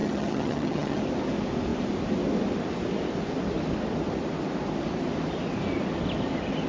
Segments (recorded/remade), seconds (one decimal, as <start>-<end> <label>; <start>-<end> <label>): 0.0-1.0 remade; 1.0-6.7 recorded